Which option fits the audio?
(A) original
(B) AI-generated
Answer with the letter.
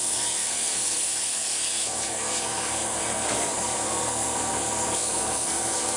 B